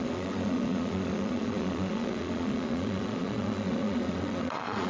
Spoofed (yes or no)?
yes